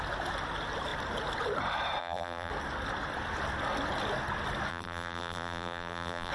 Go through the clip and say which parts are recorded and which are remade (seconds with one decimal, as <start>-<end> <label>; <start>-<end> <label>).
0.0-2.0 recorded; 2.0-2.5 remade; 2.5-4.7 recorded; 4.7-6.3 remade